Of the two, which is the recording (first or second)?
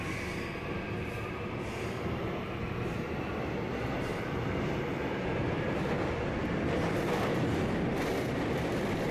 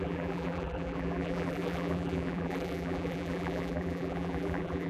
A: first